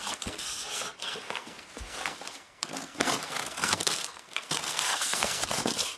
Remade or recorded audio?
remade